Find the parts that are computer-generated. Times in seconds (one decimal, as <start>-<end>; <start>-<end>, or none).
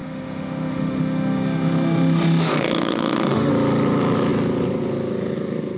0.0-3.5